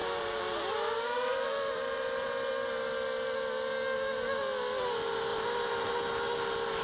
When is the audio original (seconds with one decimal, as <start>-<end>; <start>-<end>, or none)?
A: 0.7-1.3; 2.5-5.3; 5.9-6.8